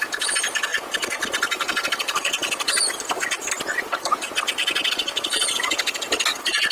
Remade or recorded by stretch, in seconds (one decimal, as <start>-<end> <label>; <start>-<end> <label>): 0.0-0.7 remade; 0.7-1.4 recorded; 1.4-2.4 remade; 2.4-6.7 recorded